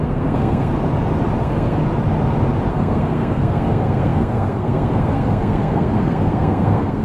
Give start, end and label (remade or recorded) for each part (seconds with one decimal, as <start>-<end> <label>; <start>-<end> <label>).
0.0-0.7 remade; 0.7-1.4 recorded; 1.4-1.8 remade; 1.8-2.7 recorded; 2.7-7.0 remade